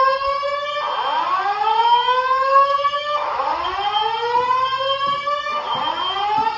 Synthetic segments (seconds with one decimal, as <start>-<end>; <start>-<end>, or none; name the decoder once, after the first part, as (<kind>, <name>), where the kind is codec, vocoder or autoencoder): 1.8-3.4 (autoencoder, DAC-VAE)